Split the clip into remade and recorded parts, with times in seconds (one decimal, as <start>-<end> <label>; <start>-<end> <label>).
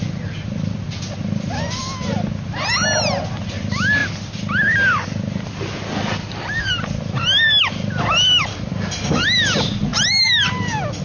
0.0-11.0 recorded